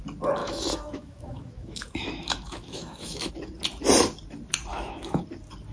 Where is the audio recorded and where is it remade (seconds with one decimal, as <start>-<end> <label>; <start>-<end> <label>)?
0.0-0.4 recorded; 0.4-3.3 remade; 3.3-4.7 recorded; 4.7-5.2 remade; 5.2-5.7 recorded